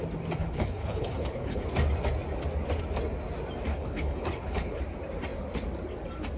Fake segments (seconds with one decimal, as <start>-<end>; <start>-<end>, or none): 0.4-1.6; 3.7-4.8

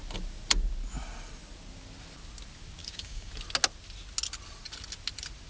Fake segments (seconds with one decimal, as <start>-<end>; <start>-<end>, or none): 2.8-3.3

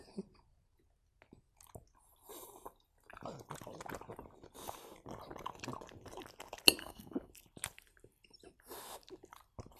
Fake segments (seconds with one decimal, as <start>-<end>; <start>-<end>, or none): 6.8-7.3

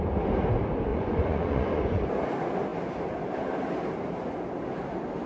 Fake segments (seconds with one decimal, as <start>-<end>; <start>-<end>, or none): 0.9-2.1